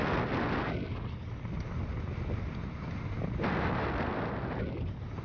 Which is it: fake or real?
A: real